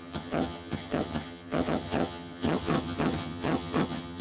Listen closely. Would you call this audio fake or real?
fake